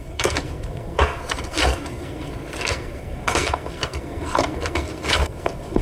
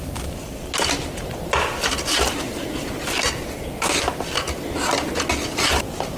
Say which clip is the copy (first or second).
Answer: first